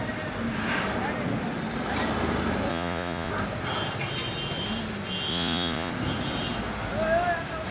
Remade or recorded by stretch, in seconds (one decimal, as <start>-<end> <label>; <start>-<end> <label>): 0.0-2.7 recorded; 2.7-3.3 remade; 3.3-5.3 recorded; 5.3-5.9 remade; 5.9-7.7 recorded